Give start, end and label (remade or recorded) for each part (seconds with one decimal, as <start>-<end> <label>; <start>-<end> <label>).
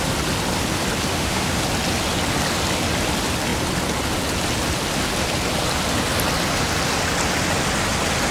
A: 0.0-1.1 recorded; 1.1-1.6 remade; 1.6-8.3 recorded